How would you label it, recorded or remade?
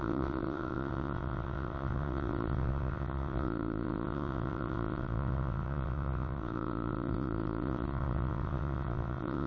remade